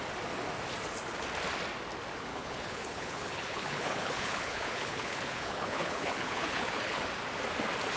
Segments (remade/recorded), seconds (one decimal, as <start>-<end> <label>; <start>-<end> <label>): 0.0-2.3 recorded; 2.3-7.0 remade; 7.0-8.0 recorded